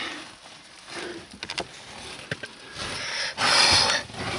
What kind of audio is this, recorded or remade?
recorded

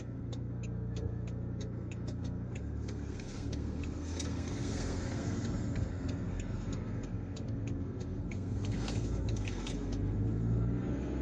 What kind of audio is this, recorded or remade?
remade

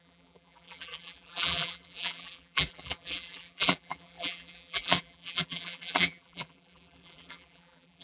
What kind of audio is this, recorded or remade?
remade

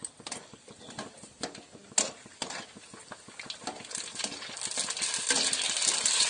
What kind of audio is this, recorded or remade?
recorded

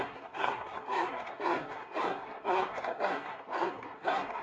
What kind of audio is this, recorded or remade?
remade